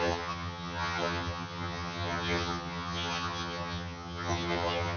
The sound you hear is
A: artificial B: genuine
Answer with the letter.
A